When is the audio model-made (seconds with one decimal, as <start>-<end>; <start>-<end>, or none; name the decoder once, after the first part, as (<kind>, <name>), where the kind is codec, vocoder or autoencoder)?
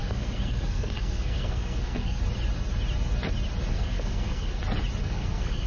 0.0-2.2 (codec, SNAC); 3.7-4.6; 5.0-5.7